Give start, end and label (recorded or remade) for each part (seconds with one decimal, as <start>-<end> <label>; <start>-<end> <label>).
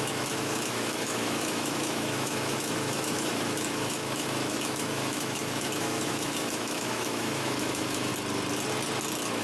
0.0-8.1 remade; 8.1-9.4 recorded